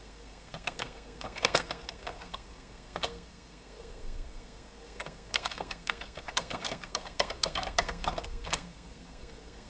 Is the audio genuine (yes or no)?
no